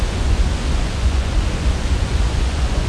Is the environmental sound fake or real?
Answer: fake